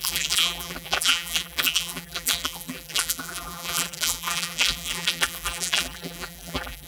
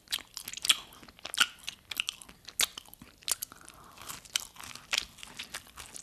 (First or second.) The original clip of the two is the second